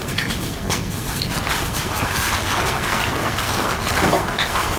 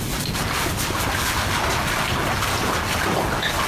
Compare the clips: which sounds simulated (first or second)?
first